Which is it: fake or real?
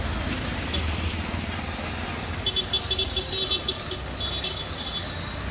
real